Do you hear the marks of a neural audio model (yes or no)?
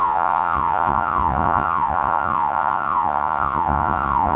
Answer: yes